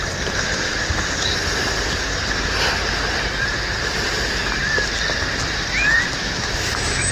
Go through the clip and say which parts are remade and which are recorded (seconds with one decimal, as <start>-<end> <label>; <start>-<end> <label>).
0.0-6.2 recorded; 6.2-7.1 remade